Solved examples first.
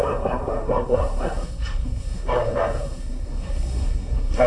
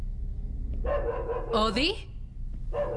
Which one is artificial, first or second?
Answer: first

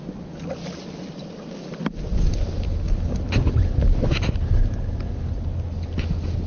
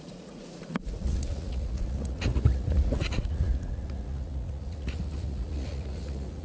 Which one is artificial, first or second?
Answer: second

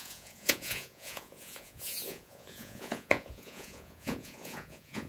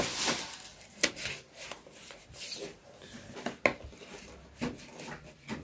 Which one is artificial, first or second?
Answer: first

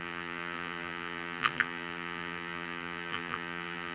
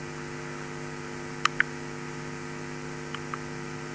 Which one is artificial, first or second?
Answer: first